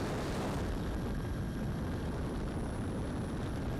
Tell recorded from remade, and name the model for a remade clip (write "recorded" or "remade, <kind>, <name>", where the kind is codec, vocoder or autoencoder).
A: recorded